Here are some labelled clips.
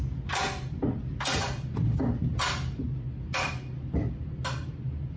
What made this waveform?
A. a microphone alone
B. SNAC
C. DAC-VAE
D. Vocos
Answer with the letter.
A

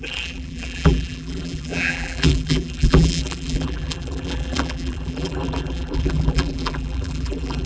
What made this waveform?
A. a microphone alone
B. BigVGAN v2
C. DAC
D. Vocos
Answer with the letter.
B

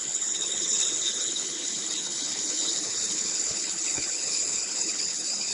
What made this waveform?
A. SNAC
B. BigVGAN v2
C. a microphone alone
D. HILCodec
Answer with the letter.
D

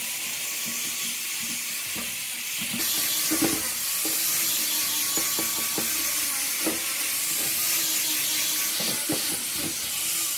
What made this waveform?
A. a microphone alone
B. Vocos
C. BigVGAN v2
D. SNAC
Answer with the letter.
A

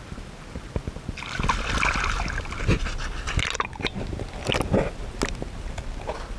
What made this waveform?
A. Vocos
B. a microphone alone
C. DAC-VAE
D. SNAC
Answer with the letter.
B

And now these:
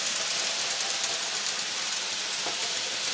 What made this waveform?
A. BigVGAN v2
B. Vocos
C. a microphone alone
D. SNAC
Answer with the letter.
C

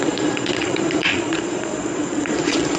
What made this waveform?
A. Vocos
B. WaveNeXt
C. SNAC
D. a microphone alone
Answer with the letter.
A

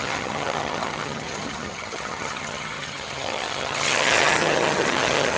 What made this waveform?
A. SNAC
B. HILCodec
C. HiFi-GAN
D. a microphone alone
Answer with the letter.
C